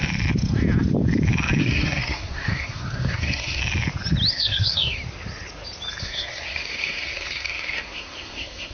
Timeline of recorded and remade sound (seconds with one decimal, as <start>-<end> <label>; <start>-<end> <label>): 0.0-1.6 recorded; 1.6-3.6 remade; 3.6-4.3 recorded; 4.3-5.0 remade; 5.0-6.0 recorded; 6.0-8.7 remade